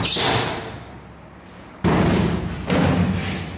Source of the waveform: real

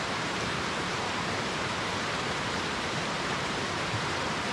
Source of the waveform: fake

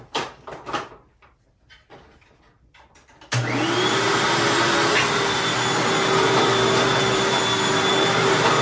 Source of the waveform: real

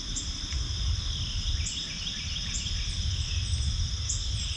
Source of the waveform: real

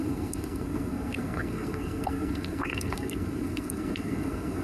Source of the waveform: fake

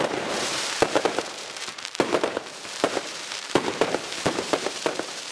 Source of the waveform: fake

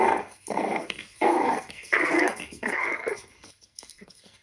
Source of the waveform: fake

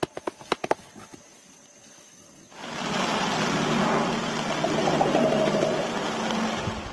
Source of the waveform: real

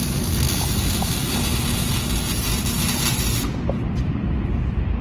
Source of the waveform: real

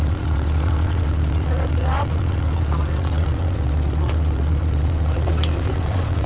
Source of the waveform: fake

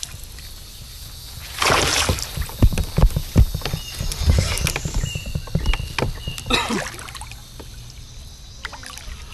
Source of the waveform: real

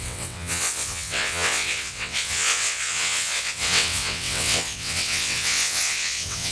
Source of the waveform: fake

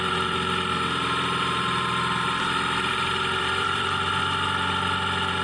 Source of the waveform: fake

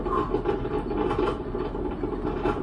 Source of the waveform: real